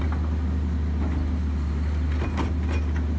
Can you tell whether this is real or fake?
real